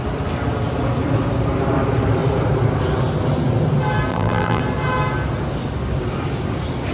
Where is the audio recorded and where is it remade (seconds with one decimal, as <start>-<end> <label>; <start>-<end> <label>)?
0.0-4.1 recorded; 4.1-4.6 remade; 4.6-6.9 recorded